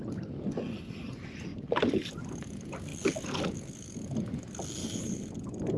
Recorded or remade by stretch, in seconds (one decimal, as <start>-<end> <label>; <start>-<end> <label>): 0.0-1.5 recorded; 1.5-2.2 remade; 2.2-4.8 recorded; 4.8-5.3 remade; 5.3-5.8 recorded